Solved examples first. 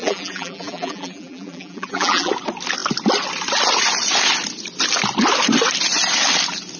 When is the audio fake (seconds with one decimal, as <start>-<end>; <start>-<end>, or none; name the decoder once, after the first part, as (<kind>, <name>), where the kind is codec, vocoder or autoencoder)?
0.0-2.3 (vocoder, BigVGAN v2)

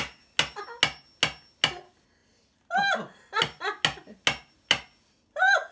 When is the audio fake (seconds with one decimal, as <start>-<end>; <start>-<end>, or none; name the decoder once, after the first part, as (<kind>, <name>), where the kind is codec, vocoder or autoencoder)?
none

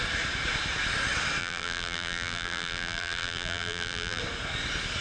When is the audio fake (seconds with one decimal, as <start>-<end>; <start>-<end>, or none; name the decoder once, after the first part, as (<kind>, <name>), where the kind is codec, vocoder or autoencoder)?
1.4-4.2 (vocoder, BigVGAN v2)

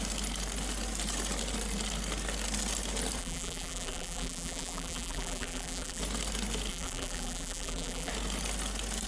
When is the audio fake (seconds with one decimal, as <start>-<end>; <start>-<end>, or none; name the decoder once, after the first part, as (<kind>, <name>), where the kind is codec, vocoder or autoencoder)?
3.2-6.0 (vocoder, BigVGAN v2); 6.7-8.1